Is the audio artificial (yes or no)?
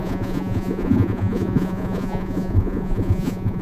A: yes